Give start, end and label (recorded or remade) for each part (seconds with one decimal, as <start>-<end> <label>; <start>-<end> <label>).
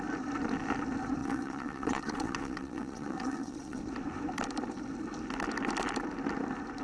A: 0.0-1.2 recorded; 1.2-3.8 remade; 3.8-6.8 recorded